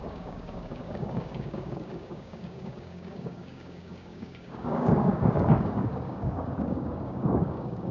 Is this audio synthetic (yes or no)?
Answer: yes